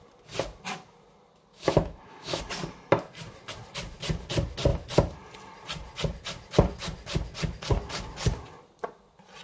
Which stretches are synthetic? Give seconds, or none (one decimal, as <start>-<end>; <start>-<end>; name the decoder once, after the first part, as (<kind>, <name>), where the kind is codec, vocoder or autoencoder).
1.5-2.4 (autoencoder, DAC-VAE)